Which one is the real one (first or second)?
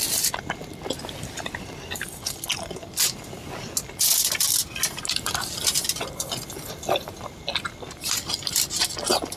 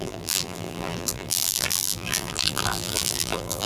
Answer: first